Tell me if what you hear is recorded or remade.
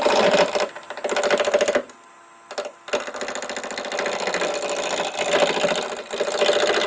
recorded